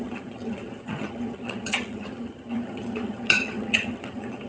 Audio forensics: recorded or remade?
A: remade